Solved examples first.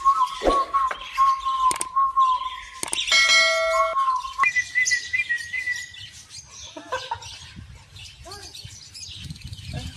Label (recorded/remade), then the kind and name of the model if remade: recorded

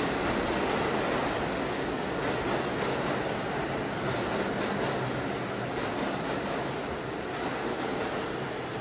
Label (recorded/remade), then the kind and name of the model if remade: recorded